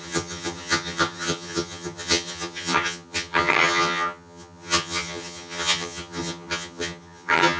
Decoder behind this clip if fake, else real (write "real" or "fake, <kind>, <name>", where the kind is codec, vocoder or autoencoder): fake, vocoder, HiFi-GAN